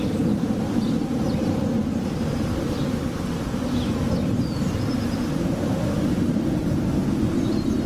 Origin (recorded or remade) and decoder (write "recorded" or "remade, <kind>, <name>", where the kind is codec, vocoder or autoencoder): recorded